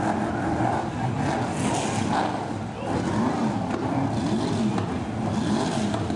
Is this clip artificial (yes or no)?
no